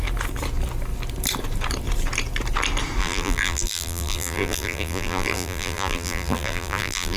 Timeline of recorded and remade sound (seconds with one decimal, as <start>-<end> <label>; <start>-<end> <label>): 0.0-3.0 recorded; 3.0-7.2 remade